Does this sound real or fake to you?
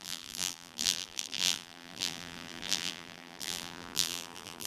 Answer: fake